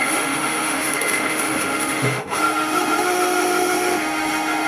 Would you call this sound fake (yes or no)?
yes